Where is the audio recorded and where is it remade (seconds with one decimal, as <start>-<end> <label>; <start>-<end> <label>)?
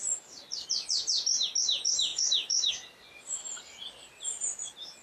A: 0.0-2.1 recorded; 2.1-2.7 remade; 2.7-5.0 recorded